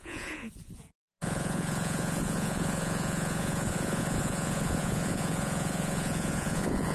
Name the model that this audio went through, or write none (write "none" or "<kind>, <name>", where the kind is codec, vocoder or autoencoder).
vocoder, Vocos